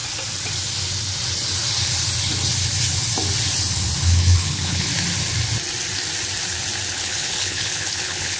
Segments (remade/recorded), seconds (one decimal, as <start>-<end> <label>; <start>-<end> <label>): 0.0-4.0 recorded; 4.0-4.9 remade; 4.9-6.9 recorded; 6.9-8.4 remade